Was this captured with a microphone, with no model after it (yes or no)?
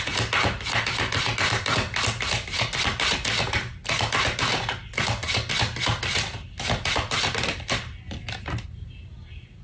yes